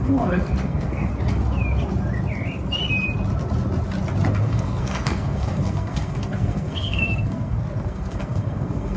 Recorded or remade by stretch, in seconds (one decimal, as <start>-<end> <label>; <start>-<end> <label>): 0.0-1.1 remade; 1.1-4.4 recorded; 4.4-9.0 remade